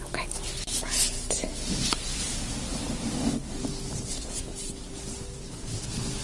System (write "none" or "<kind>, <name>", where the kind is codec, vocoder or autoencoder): none